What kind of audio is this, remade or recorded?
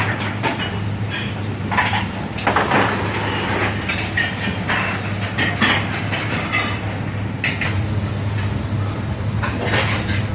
recorded